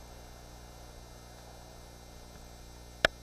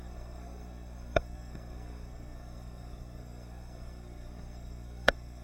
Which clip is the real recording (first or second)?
first